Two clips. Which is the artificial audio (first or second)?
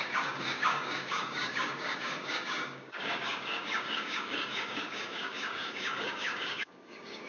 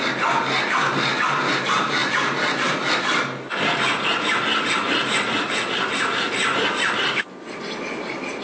first